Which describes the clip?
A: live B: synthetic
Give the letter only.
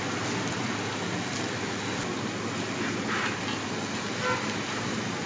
A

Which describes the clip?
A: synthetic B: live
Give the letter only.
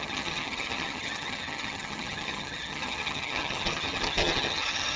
A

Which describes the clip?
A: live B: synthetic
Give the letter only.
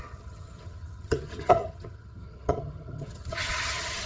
B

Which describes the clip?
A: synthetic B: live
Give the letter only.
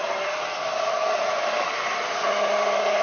B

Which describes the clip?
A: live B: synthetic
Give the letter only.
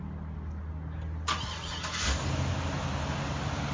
A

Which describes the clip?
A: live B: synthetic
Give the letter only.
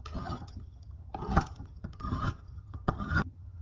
B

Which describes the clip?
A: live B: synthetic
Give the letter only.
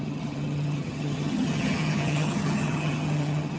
B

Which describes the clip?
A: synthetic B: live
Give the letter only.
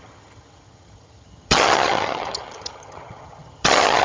A